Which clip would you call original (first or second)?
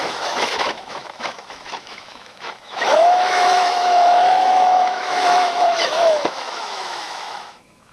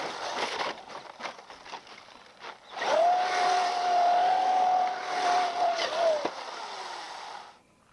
second